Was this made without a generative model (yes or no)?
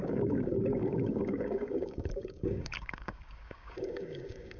no